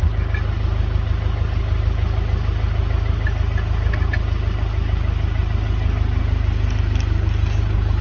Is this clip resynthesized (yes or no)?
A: no